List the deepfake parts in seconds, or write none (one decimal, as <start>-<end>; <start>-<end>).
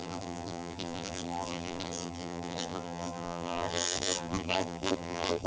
0.0-5.5